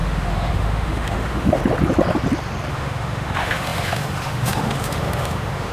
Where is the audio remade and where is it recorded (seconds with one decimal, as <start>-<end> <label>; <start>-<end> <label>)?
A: 0.0-1.6 remade; 1.6-2.7 recorded; 2.7-5.7 remade